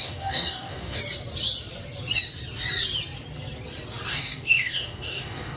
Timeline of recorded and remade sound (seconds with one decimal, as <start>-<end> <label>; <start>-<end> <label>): 0.0-1.0 remade; 1.0-4.1 recorded; 4.1-5.6 remade